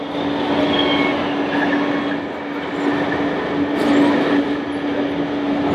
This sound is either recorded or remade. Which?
recorded